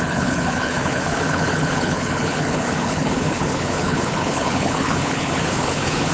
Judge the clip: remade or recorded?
remade